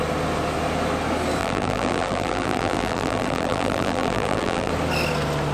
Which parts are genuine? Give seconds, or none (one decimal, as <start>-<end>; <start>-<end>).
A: 0.0-1.4; 4.7-5.5

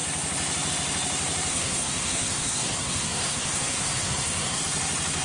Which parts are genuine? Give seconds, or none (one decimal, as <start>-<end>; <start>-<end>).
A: 0.0-1.5; 4.6-5.2

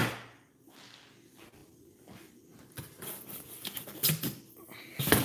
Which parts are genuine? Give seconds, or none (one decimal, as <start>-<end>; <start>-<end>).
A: 0.0-1.6; 4.5-5.2